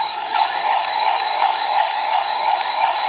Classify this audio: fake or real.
fake